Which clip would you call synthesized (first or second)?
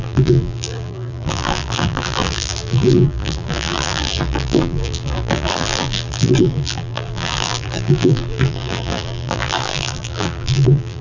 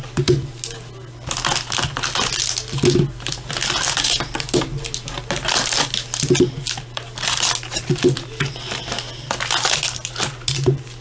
first